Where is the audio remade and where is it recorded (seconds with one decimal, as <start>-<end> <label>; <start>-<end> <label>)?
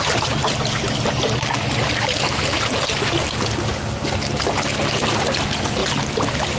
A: 0.0-6.6 recorded